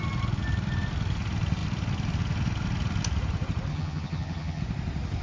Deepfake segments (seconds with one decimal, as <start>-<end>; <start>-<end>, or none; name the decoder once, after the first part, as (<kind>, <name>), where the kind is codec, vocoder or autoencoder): 3.7-4.6 (vocoder, HiFi-GAN)